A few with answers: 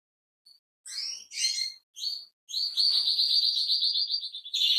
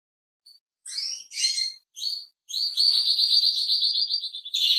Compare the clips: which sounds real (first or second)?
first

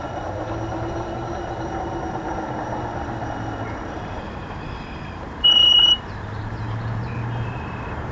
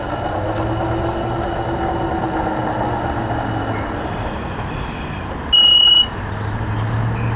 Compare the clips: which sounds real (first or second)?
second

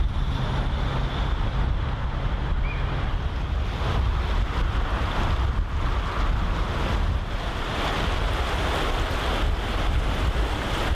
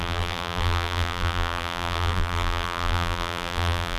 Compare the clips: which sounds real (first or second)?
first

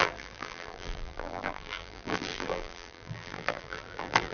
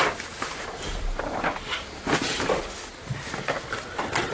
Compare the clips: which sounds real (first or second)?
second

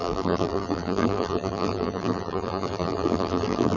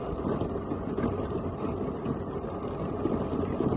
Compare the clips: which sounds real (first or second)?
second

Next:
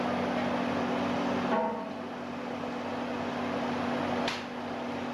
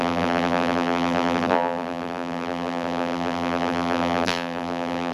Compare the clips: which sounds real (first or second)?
first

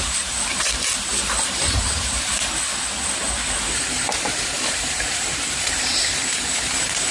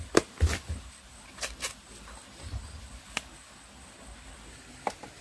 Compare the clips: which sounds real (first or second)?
second